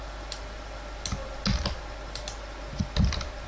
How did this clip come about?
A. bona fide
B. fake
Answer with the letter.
A